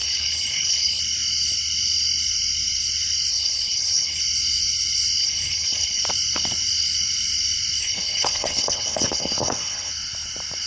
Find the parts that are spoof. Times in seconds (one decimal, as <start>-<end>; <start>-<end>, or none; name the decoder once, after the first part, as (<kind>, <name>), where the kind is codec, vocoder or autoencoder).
0.0-1.0 (codec, HILCodec); 3.3-4.2; 5.2-6.0; 7.8-9.9